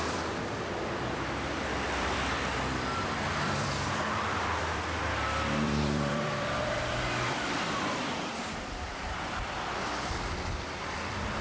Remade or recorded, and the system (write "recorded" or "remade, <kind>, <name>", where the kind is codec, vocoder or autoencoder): remade, vocoder, BigVGAN v2